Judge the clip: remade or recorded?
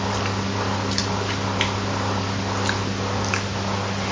recorded